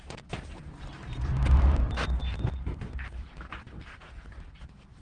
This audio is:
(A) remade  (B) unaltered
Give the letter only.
A